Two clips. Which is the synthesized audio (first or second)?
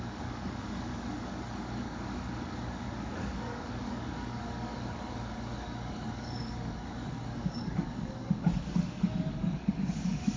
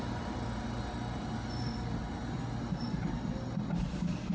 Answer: first